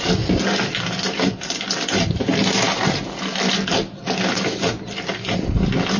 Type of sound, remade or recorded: recorded